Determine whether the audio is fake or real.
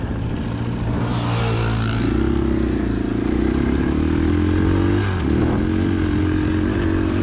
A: real